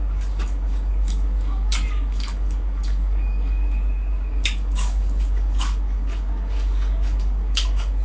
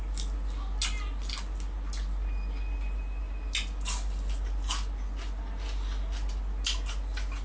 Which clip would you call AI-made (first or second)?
first